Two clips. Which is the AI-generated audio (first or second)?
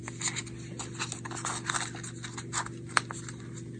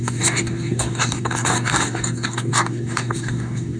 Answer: second